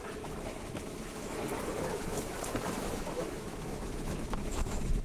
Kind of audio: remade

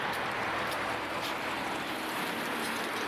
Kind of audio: recorded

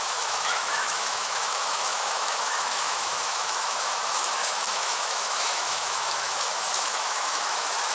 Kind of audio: remade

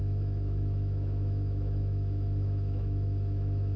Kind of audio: remade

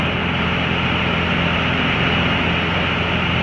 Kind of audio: recorded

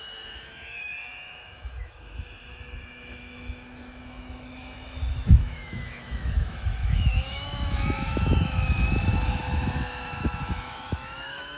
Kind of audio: remade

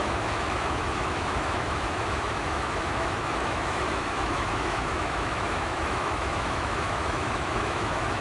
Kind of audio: remade